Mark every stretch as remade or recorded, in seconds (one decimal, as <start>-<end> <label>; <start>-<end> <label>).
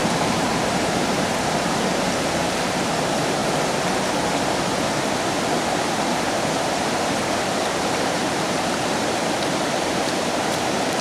0.0-1.9 remade; 1.9-2.4 recorded; 2.4-3.4 remade; 3.4-5.8 recorded; 5.8-11.0 remade